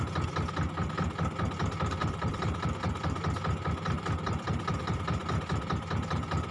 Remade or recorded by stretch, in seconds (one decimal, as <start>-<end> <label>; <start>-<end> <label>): 0.0-2.0 recorded; 2.0-4.8 remade; 4.8-6.5 recorded